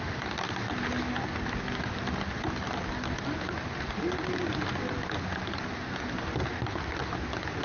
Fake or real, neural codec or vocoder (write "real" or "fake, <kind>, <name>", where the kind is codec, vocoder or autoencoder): real